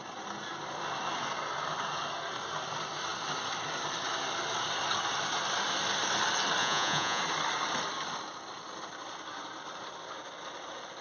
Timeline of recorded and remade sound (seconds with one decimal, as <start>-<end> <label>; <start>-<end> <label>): 0.0-6.6 recorded; 6.6-7.2 remade; 7.2-11.0 recorded